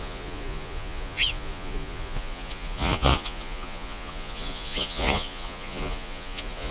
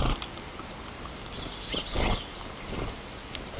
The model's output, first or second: first